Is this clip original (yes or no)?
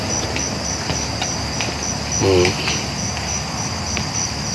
yes